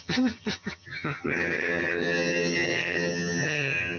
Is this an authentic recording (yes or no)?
no